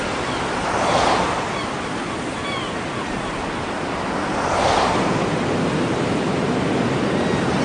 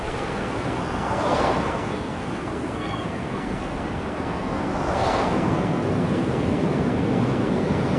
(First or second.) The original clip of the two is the first